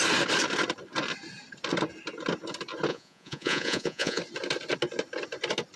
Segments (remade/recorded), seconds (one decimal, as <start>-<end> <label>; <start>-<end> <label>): 0.0-2.9 recorded; 2.9-4.2 remade; 4.2-5.8 recorded